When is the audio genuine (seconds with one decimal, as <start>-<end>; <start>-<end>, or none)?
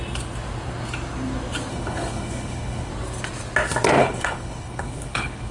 0.0-1.7; 2.9-4.0